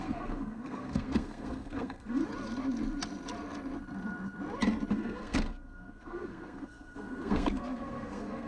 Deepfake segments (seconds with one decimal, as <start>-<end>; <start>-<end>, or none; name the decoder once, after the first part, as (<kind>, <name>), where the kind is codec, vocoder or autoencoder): 0.0-2.2 (codec, SNAC); 4.9-8.5